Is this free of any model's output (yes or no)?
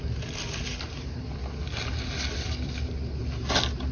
yes